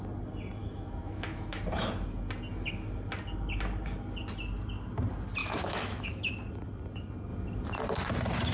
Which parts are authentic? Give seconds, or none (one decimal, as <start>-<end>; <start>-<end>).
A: 0.0-0.6; 1.6-5.4; 6.3-8.5